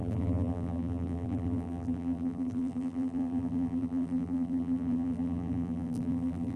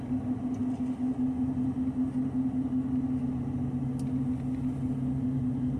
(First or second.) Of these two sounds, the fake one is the first